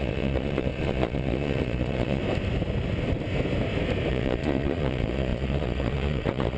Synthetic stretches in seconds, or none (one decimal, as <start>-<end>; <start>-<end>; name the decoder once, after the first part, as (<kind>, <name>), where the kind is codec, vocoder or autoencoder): 0.0-2.2 (vocoder, Vocos); 4.1-6.6